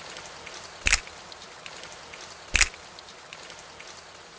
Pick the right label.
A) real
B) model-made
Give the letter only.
A